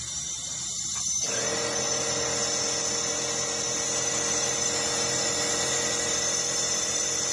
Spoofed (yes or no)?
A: no